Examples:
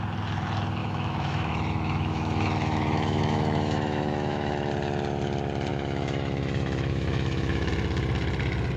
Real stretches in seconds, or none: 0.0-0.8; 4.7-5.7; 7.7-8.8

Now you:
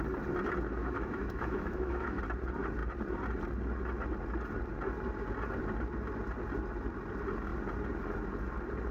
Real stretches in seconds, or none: 0.0-0.8; 2.2-8.9

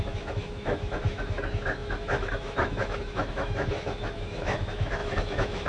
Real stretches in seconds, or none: none

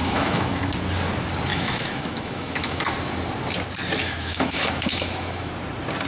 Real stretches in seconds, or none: 0.6-1.5; 2.9-4.0; 5.5-6.1

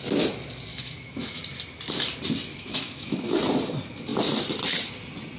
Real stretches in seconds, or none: 0.0-0.7; 1.4-2.5; 3.3-5.4